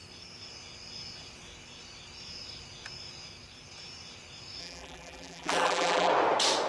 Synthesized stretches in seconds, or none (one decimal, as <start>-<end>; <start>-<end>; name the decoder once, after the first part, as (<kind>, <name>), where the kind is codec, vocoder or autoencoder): 4.6-6.1 (vocoder, BigVGAN v2)